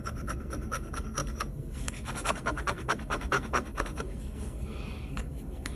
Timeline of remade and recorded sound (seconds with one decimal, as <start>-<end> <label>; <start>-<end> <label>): 0.0-5.8 remade